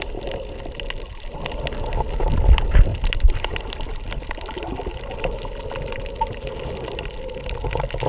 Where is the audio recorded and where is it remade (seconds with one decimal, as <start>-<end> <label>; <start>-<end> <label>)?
0.0-2.9 recorded; 2.9-6.7 remade; 6.7-8.1 recorded